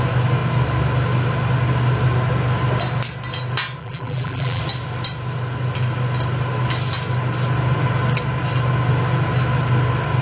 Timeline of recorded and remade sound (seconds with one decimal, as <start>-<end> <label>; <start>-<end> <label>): 0.0-3.8 recorded; 3.8-4.6 remade; 4.6-10.2 recorded